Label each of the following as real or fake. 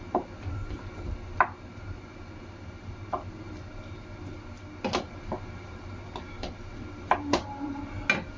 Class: real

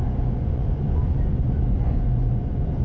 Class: fake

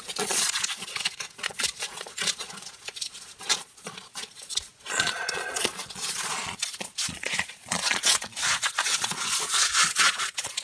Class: fake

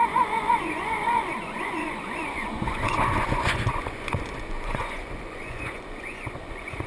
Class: fake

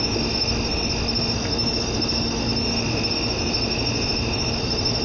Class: real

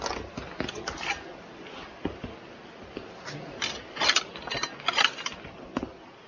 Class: real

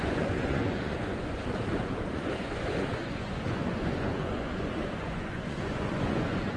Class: fake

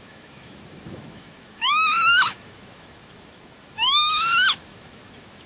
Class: fake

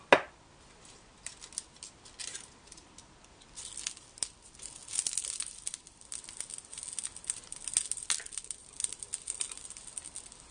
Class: real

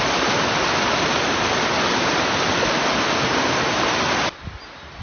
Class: real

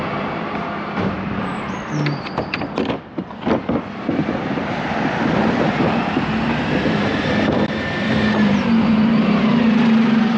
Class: fake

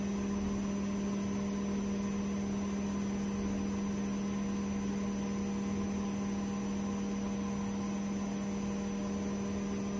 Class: real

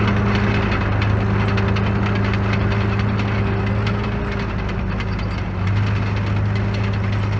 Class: real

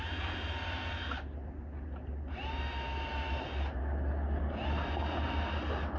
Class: real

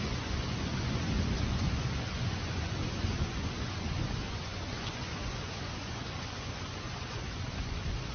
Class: fake